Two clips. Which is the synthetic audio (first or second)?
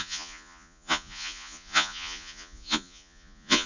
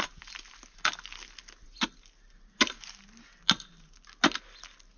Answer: first